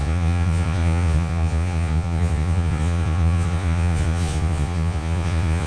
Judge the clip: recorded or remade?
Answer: remade